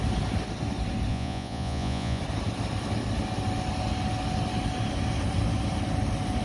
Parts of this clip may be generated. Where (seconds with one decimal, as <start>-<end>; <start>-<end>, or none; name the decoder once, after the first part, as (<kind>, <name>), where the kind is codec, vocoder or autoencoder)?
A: 1.1-2.2 (vocoder, Vocos)